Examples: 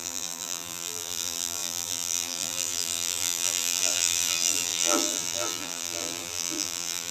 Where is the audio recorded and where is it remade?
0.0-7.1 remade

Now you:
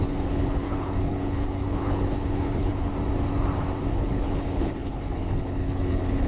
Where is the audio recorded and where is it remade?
0.0-2.9 remade; 2.9-3.9 recorded; 3.9-6.3 remade

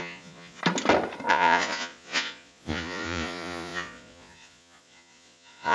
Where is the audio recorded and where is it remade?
0.0-0.6 remade; 0.6-1.3 recorded; 1.3-5.7 remade

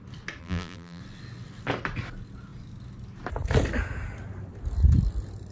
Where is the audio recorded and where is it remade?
0.0-0.4 recorded; 0.4-1.0 remade; 1.0-5.5 recorded

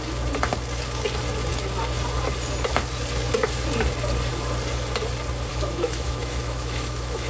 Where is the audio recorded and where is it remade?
0.0-5.5 recorded; 5.5-7.3 remade